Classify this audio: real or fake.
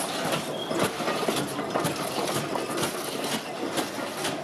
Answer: real